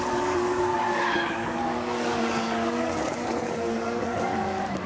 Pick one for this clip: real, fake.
fake